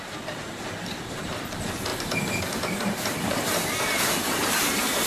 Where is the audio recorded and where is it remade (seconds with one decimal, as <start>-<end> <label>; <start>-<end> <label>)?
0.0-1.9 remade; 1.9-3.2 recorded; 3.2-5.1 remade